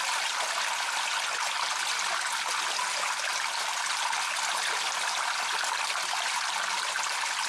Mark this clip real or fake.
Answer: real